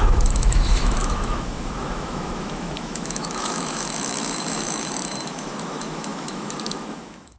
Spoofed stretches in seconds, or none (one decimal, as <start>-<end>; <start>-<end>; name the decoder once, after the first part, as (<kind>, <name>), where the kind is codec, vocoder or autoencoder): 0.0-7.4 (autoencoder, DAC-VAE)